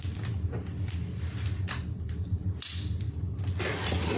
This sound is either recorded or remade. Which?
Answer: recorded